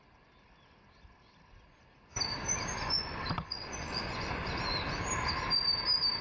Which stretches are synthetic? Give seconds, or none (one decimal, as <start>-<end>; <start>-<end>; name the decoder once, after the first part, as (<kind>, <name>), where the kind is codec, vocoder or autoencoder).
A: 2.7-4.5 (vocoder, Vocos)